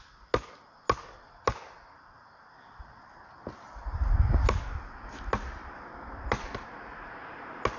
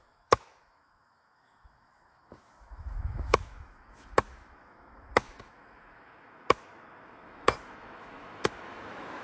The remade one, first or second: second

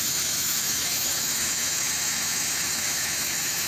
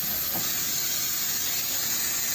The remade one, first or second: first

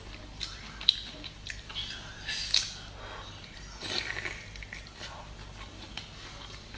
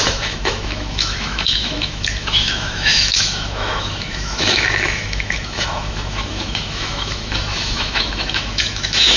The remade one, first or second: second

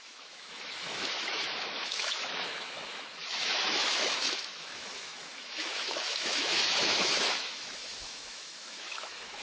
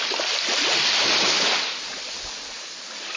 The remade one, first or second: first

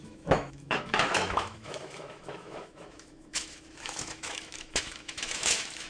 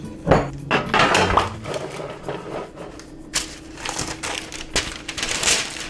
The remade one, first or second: first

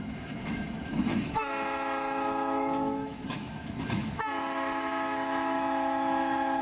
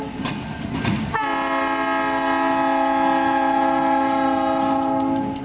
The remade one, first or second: first